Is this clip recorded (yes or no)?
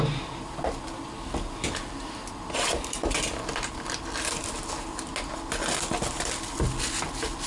yes